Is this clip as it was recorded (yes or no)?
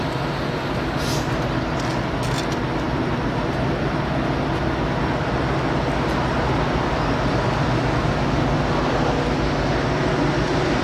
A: yes